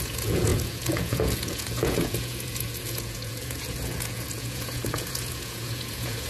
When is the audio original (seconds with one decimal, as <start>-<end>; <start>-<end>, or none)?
none